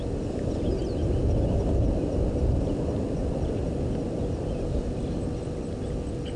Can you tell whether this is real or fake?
real